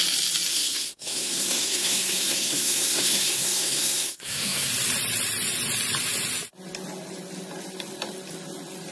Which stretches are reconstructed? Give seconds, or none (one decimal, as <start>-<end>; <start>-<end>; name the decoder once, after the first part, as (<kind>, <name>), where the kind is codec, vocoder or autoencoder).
0.5-4.7 (codec, SNAC)